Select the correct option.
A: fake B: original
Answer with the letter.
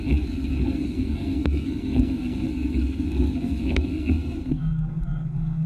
A